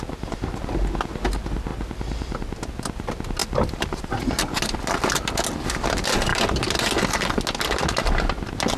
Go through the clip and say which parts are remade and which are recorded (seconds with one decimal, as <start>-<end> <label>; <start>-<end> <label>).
0.0-3.4 recorded; 3.4-4.1 remade; 4.1-8.8 recorded

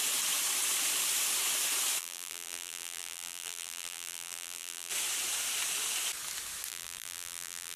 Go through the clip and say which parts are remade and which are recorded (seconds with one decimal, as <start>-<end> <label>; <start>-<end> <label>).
0.0-2.0 recorded; 2.0-4.9 remade; 4.9-6.7 recorded; 6.7-7.8 remade